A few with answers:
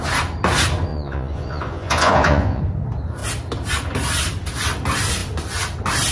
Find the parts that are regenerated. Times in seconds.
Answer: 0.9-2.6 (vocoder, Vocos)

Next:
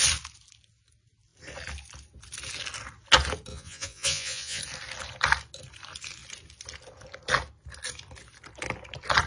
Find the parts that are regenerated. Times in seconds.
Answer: 3.5-4.6 (vocoder, Vocos)

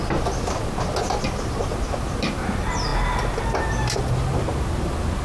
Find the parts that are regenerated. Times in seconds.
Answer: none

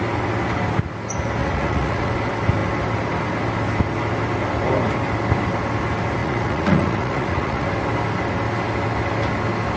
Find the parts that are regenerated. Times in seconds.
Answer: 1.4-2.1 (vocoder, Vocos); 6.2-7.7

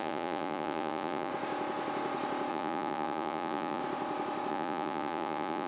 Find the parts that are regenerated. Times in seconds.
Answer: 0.0-1.3 (vocoder, Vocos); 2.5-3.8; 4.5-5.7